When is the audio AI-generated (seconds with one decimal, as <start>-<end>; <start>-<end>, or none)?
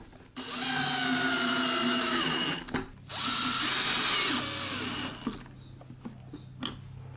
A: 1.9-2.6